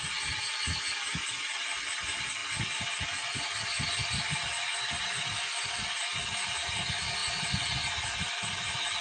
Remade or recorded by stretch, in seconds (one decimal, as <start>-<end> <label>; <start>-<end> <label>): 0.0-9.0 recorded